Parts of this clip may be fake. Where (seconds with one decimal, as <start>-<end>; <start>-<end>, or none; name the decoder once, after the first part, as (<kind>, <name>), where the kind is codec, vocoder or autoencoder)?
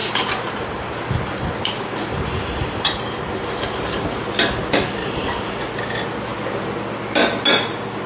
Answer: 0.0-3.9 (vocoder, BigVGAN v2); 5.0-5.6